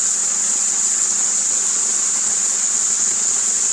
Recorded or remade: remade